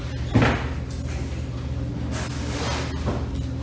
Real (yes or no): yes